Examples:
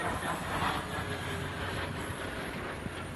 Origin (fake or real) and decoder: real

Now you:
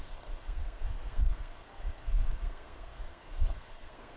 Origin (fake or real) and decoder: fake, codec, SNAC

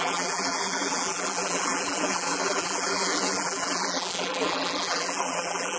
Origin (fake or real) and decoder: fake, vocoder, BigVGAN v2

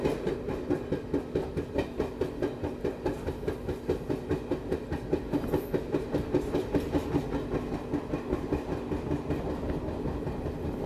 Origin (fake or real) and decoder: real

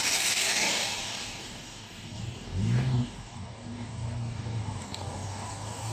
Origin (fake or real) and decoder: fake, codec, DAC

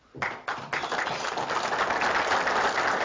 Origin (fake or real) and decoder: real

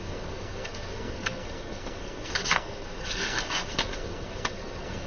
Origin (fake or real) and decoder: fake, codec, SNAC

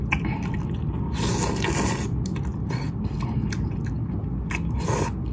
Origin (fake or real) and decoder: real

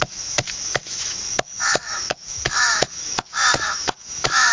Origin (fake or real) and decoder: fake, autoencoder, DAC-VAE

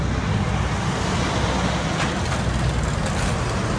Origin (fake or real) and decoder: real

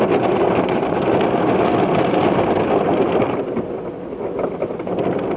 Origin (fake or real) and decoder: real